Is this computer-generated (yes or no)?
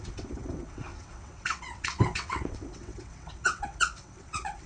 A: yes